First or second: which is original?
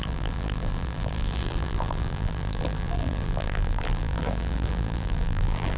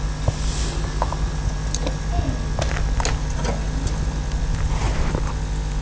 second